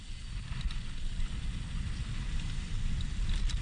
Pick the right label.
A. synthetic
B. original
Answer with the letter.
B